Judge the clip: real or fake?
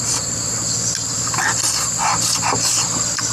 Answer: real